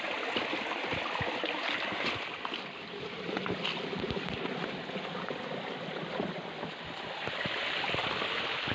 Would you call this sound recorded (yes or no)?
yes